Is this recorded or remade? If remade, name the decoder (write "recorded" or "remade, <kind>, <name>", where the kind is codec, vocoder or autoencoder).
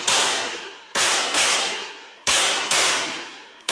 remade, codec, SNAC